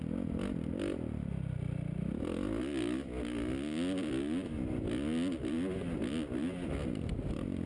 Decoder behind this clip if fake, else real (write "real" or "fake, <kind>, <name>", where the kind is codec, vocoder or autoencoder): real